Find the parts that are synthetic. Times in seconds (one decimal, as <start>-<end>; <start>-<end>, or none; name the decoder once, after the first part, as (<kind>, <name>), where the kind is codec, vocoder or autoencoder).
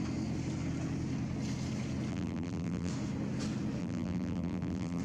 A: 2.1-2.9 (vocoder, BigVGAN v2); 3.8-5.0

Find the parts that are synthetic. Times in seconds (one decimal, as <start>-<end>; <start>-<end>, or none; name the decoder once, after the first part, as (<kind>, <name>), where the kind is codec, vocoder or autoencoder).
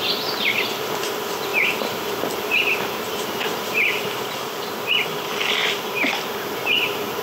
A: 1.5-4.4 (vocoder, BigVGAN v2); 5.6-6.4